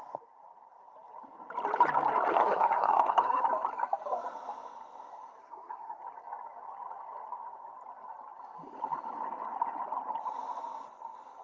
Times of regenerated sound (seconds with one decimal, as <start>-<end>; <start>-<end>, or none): 2.3-3.4; 5.4-6.0

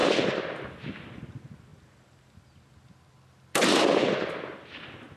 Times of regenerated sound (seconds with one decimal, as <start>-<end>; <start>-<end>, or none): none